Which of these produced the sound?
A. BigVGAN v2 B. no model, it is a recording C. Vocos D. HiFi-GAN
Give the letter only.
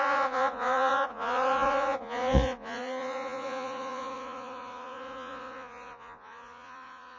C